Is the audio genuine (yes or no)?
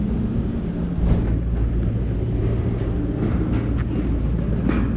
yes